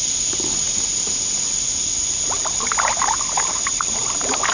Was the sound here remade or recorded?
recorded